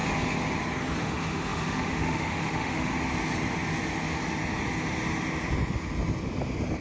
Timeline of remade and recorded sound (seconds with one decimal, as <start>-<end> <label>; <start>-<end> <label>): 0.0-1.0 recorded; 1.0-2.9 remade; 2.9-6.8 recorded